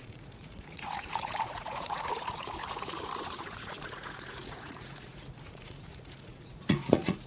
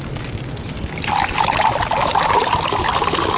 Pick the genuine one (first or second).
second